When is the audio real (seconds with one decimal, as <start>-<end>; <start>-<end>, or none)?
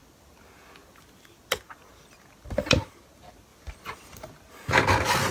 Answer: 0.0-5.3